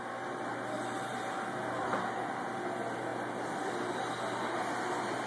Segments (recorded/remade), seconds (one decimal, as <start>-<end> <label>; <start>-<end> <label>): 0.0-5.3 recorded